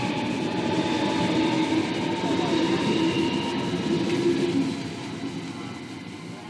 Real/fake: real